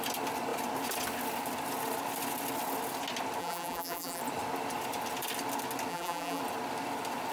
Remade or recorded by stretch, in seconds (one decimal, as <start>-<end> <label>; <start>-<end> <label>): 0.0-3.4 recorded; 3.4-4.2 remade; 4.2-5.9 recorded; 5.9-6.4 remade; 6.4-7.3 recorded